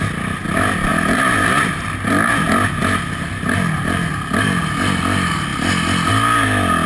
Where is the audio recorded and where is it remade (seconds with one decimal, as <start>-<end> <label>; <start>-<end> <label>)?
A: 0.0-6.9 recorded